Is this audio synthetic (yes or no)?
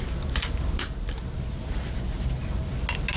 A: no